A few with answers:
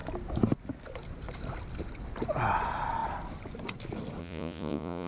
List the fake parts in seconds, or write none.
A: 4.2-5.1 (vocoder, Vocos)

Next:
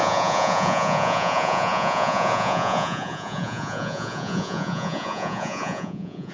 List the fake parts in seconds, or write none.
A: 0.0-6.3 (vocoder, Vocos)

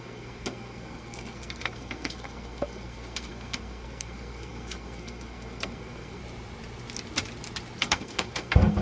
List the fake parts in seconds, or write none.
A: 0.0-6.2 (codec, SNAC); 7.8-8.8

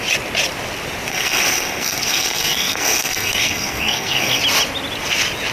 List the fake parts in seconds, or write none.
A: 1.1-4.4 (codec, SNAC)

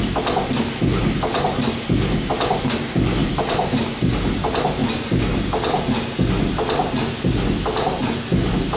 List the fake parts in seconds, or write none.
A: 3.2-3.8 (vocoder, BigVGAN v2)

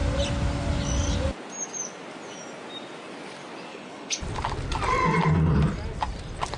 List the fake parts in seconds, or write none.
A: 3.7-4.2 (codec, HILCodec)